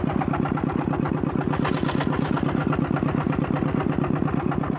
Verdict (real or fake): real